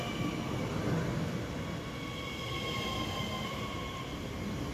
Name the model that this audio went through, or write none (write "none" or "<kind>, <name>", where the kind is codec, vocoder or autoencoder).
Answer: none